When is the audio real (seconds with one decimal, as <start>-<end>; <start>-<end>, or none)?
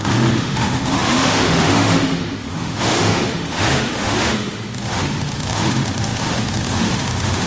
none